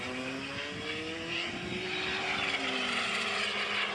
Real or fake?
real